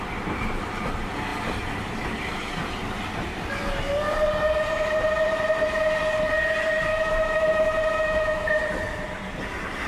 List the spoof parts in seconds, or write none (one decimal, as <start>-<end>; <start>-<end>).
6.9-8.6